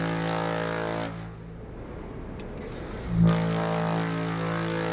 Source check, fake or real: real